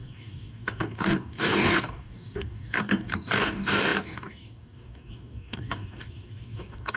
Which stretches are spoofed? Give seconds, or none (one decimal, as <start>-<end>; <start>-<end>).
0.0-7.0